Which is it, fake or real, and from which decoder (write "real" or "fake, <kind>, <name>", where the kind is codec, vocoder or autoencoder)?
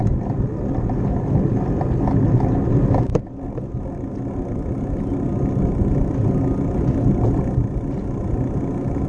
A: real